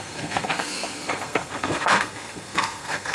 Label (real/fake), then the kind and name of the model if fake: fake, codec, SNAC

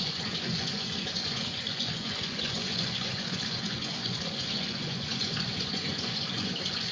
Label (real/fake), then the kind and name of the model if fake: fake, vocoder, Vocos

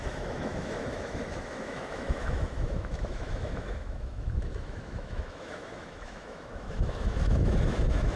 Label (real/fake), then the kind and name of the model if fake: fake, autoencoder, DAC-VAE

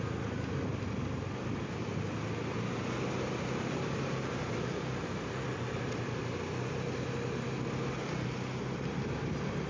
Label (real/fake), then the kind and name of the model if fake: real